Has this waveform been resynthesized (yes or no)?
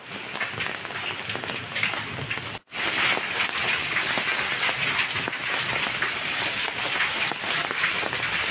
no